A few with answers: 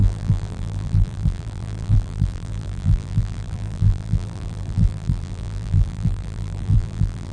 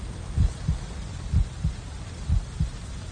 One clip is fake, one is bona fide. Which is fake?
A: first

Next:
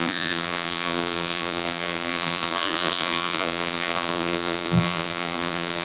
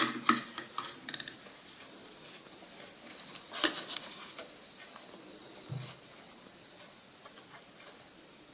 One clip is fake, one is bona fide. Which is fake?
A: first